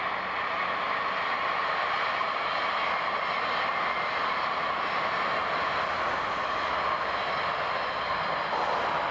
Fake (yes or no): no